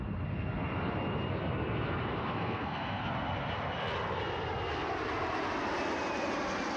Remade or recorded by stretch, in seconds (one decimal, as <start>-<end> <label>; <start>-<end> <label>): 0.0-2.3 recorded; 2.3-3.0 remade; 3.0-6.8 recorded